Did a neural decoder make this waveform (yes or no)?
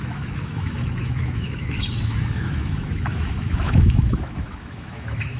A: yes